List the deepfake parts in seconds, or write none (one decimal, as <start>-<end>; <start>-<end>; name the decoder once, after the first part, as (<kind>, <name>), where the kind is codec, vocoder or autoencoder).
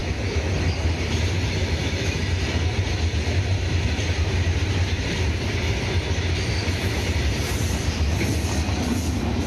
0.0-0.5 (autoencoder, DAC-VAE); 1.6-2.2